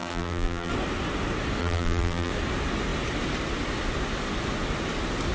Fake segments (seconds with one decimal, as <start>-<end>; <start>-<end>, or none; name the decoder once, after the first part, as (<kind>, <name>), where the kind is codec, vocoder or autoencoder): 0.0-0.7 (vocoder, BigVGAN v2); 1.6-2.3